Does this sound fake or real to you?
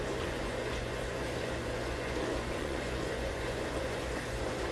fake